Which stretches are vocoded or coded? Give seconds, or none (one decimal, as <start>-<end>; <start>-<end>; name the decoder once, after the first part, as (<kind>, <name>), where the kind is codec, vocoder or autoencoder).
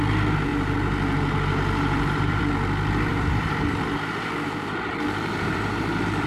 0.5-2.4 (vocoder, BigVGAN v2); 3.1-6.3